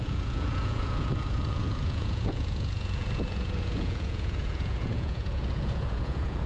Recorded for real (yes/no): no